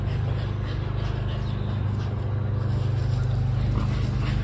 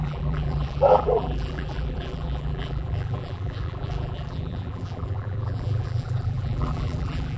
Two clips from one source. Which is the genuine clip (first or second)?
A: first